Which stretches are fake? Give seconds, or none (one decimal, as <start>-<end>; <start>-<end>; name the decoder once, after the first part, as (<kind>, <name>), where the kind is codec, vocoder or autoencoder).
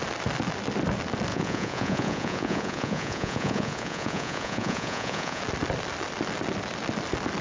1.3-5.4 (vocoder, Vocos)